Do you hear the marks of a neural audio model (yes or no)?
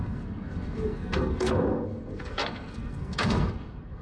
yes